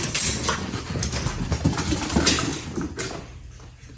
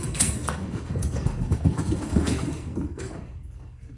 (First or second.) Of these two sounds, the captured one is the first